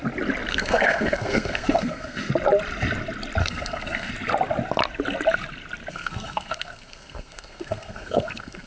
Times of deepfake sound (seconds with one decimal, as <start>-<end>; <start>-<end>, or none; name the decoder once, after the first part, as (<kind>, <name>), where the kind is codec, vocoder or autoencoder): 0.5-2.3 (codec, SNAC); 3.4-4.1; 5.9-8.7